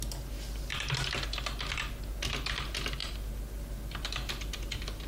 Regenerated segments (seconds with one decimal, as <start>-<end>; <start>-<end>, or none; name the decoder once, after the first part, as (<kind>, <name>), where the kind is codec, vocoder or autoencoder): none

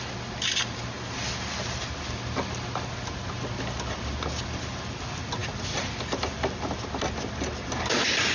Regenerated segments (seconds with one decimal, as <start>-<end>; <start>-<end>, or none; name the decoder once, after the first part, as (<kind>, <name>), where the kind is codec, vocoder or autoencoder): none